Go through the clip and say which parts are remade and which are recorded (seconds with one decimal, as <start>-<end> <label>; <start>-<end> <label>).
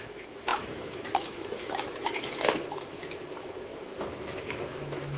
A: 0.0-5.2 remade